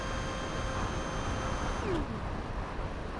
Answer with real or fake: real